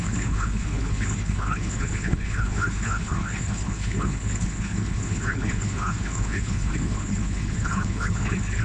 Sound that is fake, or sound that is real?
fake